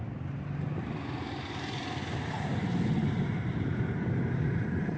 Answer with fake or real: real